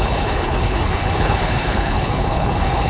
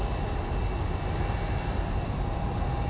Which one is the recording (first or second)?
second